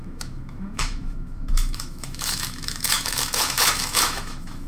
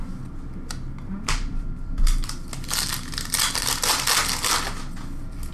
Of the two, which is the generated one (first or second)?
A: first